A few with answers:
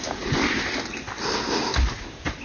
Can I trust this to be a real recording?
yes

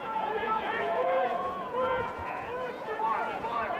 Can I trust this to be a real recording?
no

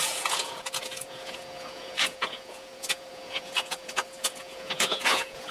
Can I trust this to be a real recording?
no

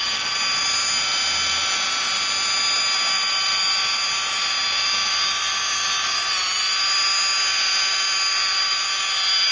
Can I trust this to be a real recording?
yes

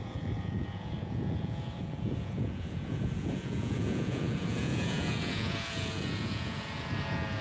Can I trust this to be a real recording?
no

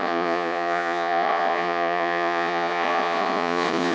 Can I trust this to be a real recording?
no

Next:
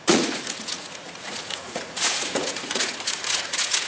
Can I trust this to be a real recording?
no